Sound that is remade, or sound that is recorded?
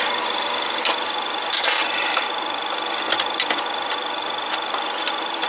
remade